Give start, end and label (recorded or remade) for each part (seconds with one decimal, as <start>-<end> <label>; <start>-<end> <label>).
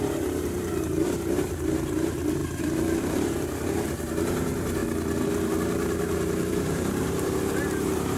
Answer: 0.0-2.4 remade; 2.4-3.0 recorded; 3.0-4.8 remade; 4.8-5.3 recorded; 5.3-8.2 remade